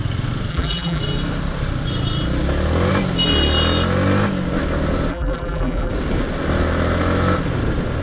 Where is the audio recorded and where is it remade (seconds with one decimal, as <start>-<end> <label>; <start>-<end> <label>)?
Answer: 0.0-0.5 recorded; 0.5-1.0 remade; 1.0-5.1 recorded; 5.1-5.9 remade; 5.9-8.0 recorded

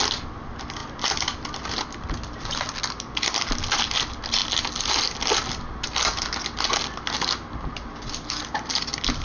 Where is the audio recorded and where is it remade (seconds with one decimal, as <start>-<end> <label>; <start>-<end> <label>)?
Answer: 0.0-9.2 recorded